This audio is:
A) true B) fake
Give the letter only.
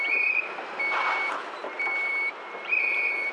B